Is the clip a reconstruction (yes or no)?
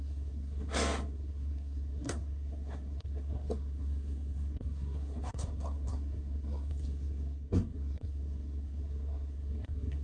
yes